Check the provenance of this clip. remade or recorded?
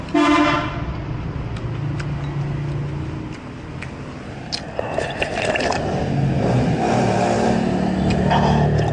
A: recorded